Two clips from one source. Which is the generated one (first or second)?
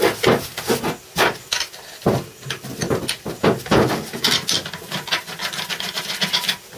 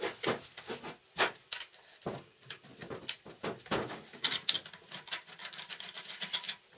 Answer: second